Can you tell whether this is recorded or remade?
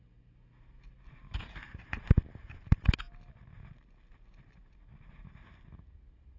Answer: recorded